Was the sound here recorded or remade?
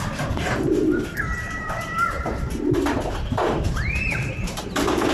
remade